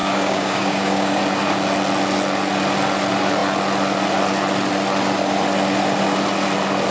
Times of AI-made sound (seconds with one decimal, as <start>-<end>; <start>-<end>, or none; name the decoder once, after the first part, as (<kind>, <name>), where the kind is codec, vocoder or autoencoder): 0.0-1.2 (codec, DAC)